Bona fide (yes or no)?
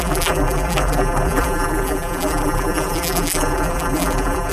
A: no